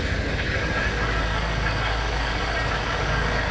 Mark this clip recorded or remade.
remade